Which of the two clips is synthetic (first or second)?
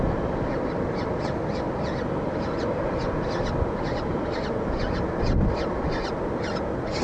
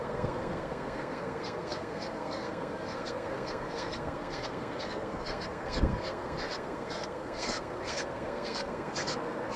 second